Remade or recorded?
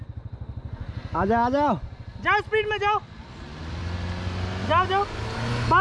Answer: recorded